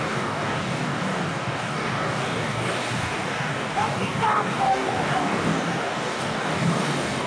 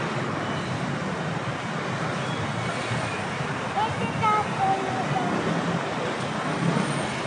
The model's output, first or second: first